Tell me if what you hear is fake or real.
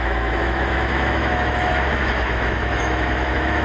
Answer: fake